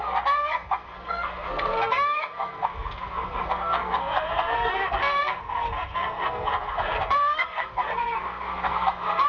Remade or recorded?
remade